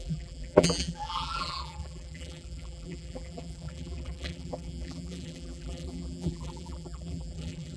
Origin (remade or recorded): remade